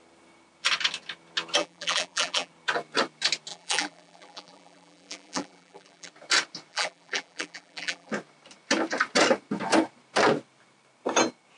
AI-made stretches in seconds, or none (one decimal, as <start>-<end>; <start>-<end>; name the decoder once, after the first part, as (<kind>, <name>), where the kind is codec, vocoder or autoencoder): 1.6-2.5 (vocoder, BigVGAN v2); 3.5-6.1; 6.7-8.1